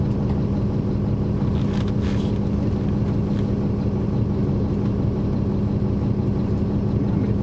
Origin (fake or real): real